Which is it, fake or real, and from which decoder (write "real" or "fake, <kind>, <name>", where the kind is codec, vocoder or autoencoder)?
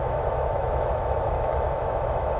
fake, autoencoder, DAC-VAE